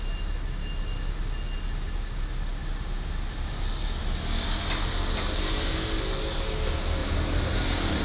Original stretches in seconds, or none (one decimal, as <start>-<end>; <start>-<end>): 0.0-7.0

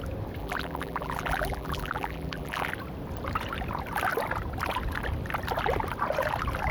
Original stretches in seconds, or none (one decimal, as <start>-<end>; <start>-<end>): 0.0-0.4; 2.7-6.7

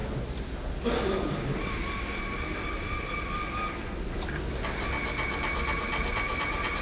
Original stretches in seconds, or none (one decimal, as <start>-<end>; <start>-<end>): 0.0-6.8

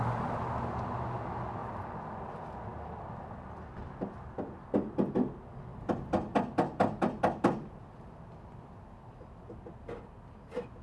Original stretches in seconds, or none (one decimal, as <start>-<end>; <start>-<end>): 0.0-1.6; 2.2-5.7; 9.5-10.8